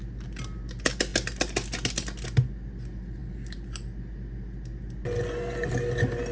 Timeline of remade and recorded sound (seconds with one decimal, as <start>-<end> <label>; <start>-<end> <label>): 0.0-6.3 recorded